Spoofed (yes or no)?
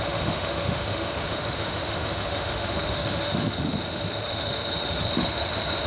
yes